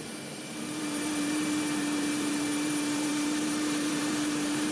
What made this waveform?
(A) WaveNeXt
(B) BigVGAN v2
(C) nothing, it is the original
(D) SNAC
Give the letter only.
B